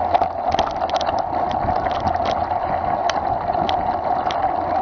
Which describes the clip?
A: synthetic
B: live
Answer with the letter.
B